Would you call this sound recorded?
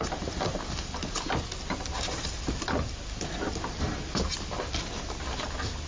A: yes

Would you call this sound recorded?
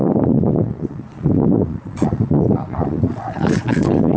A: no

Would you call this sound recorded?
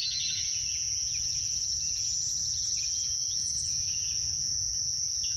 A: no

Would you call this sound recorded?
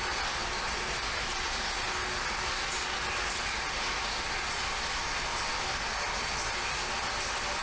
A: yes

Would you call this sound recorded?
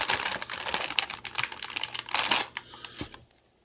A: yes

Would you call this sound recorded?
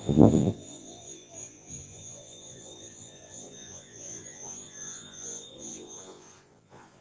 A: no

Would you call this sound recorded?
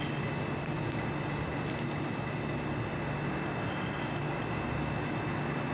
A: yes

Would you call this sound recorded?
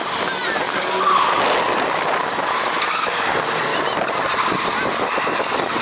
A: yes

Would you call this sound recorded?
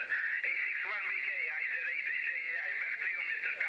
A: no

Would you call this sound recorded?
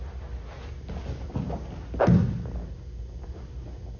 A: yes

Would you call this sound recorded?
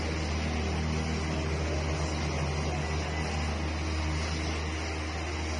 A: yes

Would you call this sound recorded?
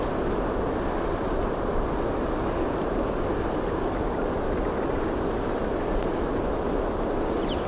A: yes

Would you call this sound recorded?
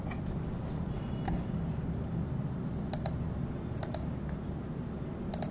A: yes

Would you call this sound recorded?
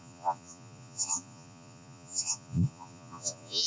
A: no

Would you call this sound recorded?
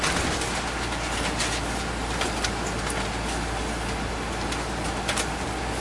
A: yes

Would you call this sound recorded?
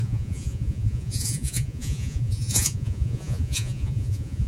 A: no